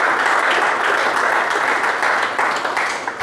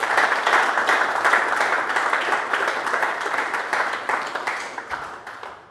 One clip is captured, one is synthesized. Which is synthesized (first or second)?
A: second